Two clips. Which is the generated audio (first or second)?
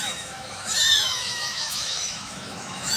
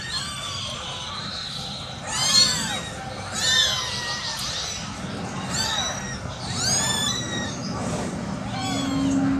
first